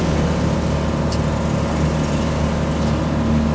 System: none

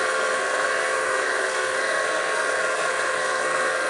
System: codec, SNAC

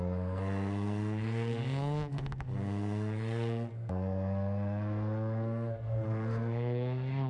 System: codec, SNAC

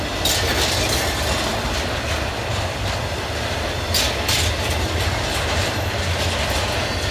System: none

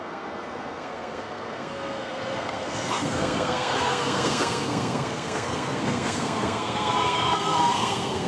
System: codec, SNAC